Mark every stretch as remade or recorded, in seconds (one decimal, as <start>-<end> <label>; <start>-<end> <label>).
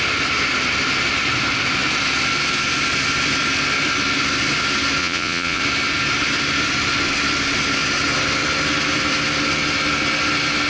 0.0-5.0 recorded; 5.0-5.6 remade; 5.6-10.7 recorded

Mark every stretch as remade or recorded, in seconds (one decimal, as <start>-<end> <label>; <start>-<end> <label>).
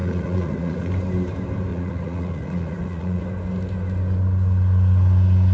0.0-0.9 remade; 0.9-1.7 recorded; 1.7-3.2 remade; 3.2-5.5 recorded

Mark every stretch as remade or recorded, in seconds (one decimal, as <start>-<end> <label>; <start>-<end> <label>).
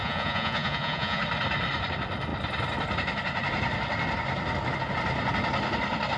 0.0-1.2 remade; 1.2-6.2 recorded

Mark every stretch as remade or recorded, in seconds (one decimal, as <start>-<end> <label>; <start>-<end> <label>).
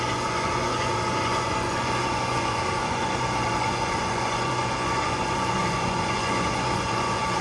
0.0-7.4 remade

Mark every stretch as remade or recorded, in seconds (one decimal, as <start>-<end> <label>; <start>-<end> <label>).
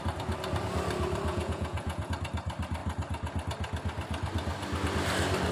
0.0-1.3 recorded; 1.3-2.1 remade; 2.1-5.5 recorded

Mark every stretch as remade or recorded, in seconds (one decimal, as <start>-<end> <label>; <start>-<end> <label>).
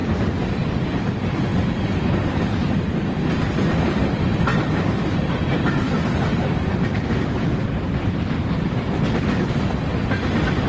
0.0-10.7 recorded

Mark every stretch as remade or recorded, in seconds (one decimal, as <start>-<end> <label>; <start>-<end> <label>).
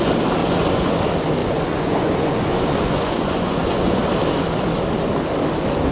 0.0-0.4 recorded; 0.4-0.9 remade; 0.9-1.4 recorded; 1.4-4.0 remade; 4.0-5.9 recorded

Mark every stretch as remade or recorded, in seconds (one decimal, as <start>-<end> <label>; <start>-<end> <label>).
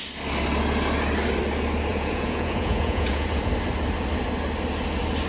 0.0-1.9 recorded; 1.9-3.4 remade; 3.4-5.3 recorded